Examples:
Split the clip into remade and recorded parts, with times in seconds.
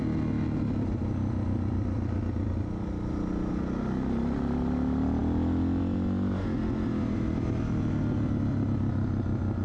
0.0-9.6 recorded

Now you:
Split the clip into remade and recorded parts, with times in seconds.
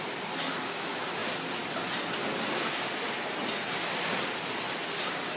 0.0-5.4 recorded